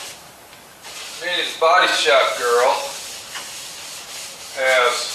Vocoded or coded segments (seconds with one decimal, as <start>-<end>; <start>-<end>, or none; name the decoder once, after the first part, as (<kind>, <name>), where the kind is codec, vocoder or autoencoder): none